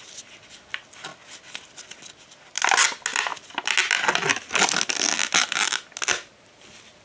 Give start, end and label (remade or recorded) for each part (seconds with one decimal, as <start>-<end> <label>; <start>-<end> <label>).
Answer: 0.0-7.0 recorded